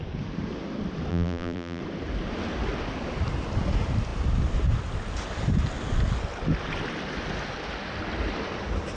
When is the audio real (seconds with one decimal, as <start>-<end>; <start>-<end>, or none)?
0.0-1.1; 1.8-9.0